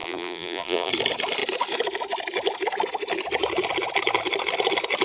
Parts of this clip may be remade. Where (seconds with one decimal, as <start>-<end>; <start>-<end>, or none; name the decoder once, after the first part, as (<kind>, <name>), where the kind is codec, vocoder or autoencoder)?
0.0-0.9 (vocoder, BigVGAN v2)